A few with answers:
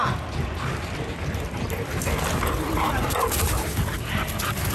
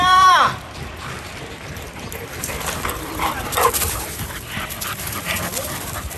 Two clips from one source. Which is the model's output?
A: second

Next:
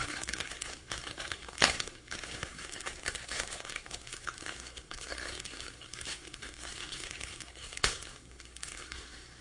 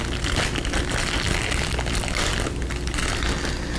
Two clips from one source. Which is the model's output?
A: first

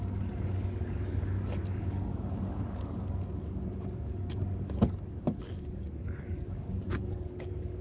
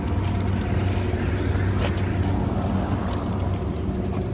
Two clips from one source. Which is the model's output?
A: first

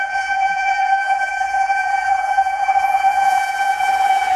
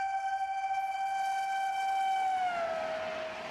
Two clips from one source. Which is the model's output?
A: first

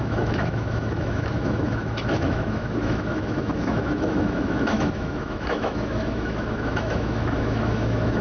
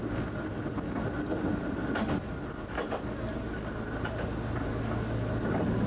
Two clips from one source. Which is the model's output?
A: first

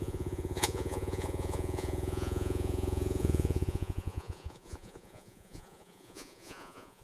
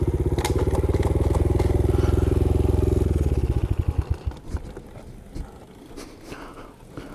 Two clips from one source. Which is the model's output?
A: first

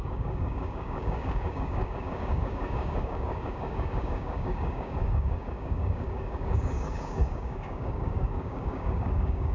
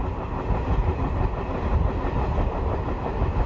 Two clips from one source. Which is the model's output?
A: first